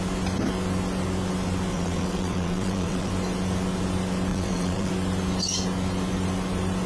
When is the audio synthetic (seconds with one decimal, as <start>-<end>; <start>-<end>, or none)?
1.7-3.1; 4.3-4.9